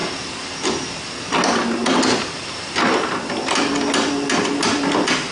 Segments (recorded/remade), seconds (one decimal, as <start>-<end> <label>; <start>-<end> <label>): 0.0-5.3 recorded

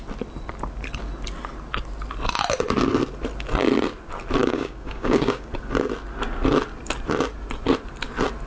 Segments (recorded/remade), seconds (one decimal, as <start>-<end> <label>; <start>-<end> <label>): 0.0-4.4 recorded; 4.4-5.5 remade; 5.5-8.5 recorded

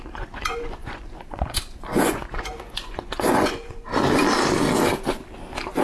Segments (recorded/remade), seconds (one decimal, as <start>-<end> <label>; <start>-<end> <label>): 0.0-3.9 remade; 3.9-5.8 recorded

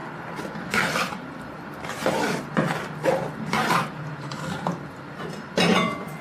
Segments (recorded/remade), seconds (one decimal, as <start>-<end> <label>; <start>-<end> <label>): 0.0-6.2 recorded

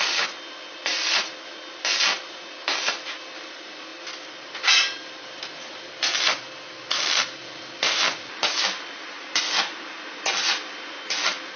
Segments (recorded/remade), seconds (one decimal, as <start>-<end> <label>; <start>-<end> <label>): 0.0-7.4 recorded; 7.4-9.3 remade; 9.3-11.6 recorded

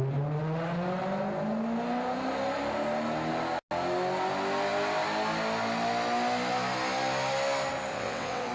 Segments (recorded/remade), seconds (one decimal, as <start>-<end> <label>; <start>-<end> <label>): 0.0-7.9 recorded; 7.9-8.5 remade

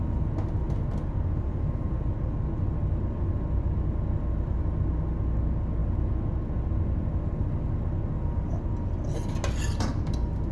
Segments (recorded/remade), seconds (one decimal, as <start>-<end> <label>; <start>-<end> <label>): 0.0-10.5 recorded

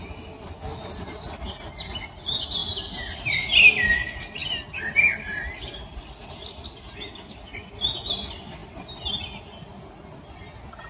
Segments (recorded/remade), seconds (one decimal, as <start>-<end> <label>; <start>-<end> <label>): 0.0-4.4 recorded; 4.4-7.4 remade; 7.4-8.6 recorded; 8.6-9.2 remade; 9.2-10.9 recorded